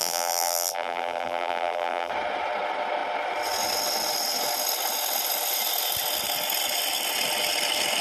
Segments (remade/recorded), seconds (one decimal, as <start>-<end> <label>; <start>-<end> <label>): 0.0-2.1 remade; 2.1-8.0 recorded